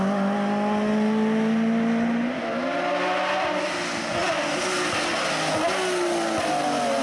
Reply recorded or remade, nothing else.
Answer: recorded